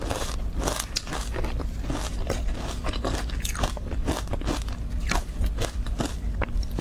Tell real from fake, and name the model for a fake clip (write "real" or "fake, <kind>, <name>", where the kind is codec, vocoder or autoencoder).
real